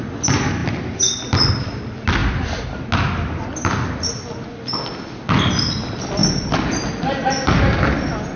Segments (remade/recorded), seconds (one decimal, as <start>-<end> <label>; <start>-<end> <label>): 0.0-8.4 recorded